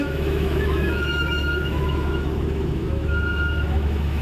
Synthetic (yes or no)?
yes